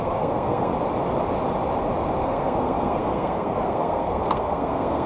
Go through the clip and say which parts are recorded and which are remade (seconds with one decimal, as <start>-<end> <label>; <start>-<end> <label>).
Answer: 0.0-0.7 remade; 0.7-2.2 recorded; 2.2-5.1 remade